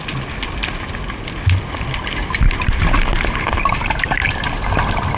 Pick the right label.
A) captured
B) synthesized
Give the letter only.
A